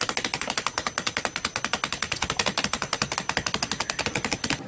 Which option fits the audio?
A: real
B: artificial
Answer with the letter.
A